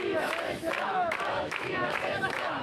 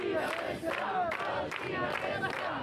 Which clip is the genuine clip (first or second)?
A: second